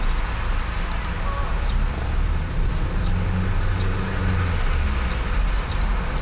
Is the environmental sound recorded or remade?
recorded